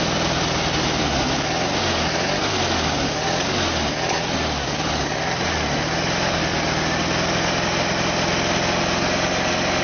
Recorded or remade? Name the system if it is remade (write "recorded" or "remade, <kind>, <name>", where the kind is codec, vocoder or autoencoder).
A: recorded